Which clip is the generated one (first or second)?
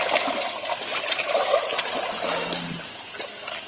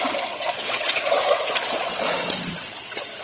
second